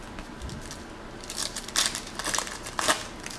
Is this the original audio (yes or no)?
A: yes